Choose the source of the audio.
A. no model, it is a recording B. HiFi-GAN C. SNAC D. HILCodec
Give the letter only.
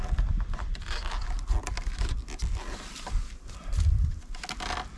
A